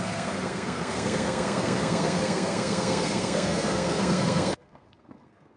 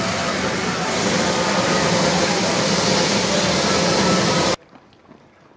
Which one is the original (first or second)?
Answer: second